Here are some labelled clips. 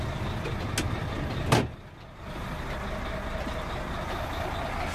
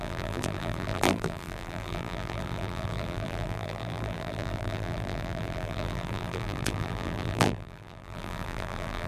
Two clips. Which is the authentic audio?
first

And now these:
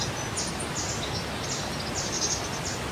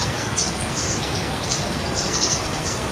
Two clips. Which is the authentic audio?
first